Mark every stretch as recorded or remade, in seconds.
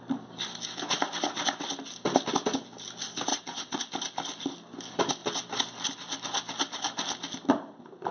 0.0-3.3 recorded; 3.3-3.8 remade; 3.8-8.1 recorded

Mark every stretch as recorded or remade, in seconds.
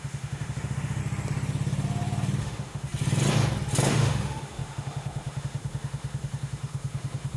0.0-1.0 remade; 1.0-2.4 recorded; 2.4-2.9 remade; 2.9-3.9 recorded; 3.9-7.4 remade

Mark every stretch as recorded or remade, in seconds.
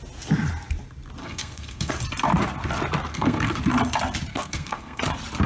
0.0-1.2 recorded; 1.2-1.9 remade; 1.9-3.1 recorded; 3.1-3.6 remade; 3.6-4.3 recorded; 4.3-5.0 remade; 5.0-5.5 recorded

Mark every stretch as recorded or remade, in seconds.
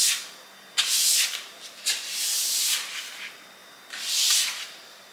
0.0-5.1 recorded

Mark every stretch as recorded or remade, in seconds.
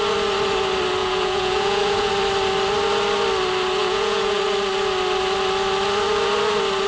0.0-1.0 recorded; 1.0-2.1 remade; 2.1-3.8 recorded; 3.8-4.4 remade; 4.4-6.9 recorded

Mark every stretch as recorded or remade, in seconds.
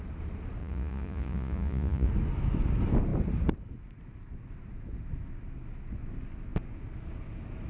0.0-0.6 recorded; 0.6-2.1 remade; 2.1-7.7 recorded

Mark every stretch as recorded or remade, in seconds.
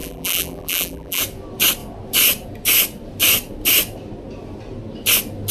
0.0-1.2 remade; 1.2-5.5 recorded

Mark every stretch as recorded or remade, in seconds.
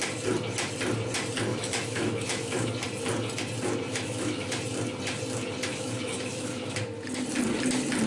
0.0-1.5 recorded; 1.5-2.7 remade; 2.7-3.9 recorded; 3.9-4.6 remade; 4.6-5.7 recorded; 5.7-6.8 remade; 6.8-8.1 recorded